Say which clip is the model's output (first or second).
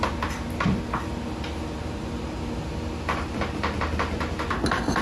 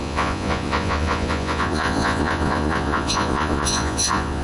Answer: second